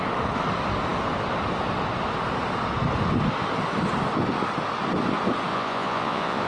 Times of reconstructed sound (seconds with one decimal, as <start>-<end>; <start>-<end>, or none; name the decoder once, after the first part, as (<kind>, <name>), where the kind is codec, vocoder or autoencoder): 5.5-6.5 (vocoder, Vocos)